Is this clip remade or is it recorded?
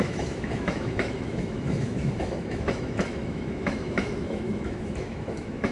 remade